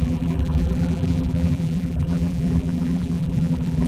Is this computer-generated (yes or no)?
yes